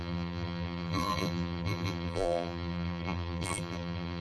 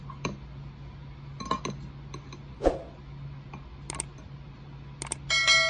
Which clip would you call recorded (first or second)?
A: second